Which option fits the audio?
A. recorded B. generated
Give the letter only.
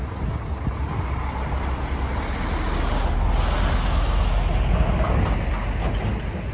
A